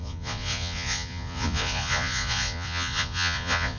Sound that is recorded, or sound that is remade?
remade